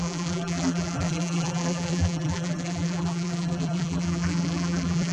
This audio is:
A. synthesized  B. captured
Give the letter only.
A